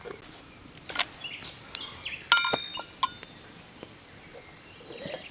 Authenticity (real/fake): real